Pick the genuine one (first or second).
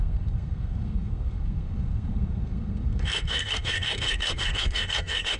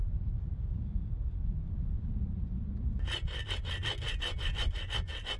second